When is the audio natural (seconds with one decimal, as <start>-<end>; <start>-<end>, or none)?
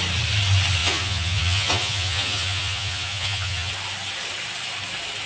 0.0-0.8; 3.7-5.3